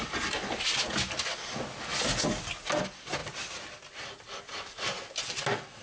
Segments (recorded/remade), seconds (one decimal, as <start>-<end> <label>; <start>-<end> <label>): 0.0-5.8 recorded